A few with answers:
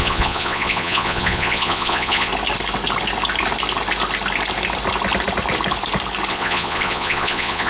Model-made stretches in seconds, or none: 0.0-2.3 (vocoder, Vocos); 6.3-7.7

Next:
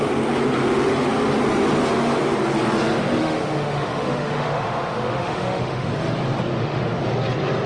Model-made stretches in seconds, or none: 3.2-5.9 (autoencoder, DAC-VAE); 6.5-7.0

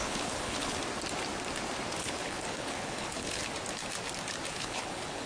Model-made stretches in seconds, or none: 0.0-0.8 (codec, HILCodec); 2.0-3.4; 4.5-5.3

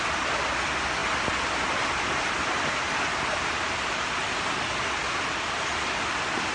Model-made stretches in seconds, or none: none

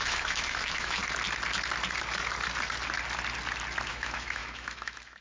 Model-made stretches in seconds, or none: 0.0-1.0 (autoencoder, DAC-VAE); 3.9-5.2

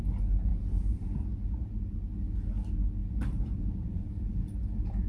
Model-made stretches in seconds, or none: 0.5-2.3 (vocoder, BigVGAN v2); 3.0-4.2

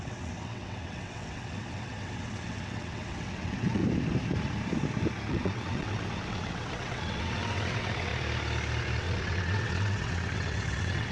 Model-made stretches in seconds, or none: 0.0-3.8 (vocoder, WaveNeXt); 5.3-8.1; 9.0-11.1